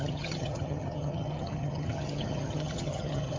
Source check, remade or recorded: remade